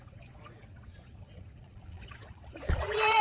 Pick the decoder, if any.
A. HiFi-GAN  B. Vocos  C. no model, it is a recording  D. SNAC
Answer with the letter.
B